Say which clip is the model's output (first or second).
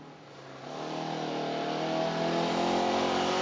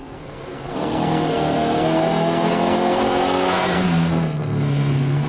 second